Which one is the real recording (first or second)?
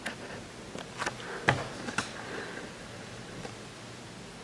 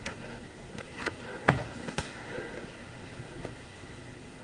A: first